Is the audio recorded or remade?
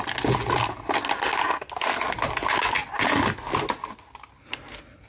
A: recorded